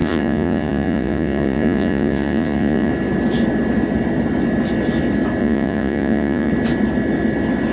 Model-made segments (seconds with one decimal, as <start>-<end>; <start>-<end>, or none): 0.0-2.9; 5.4-6.5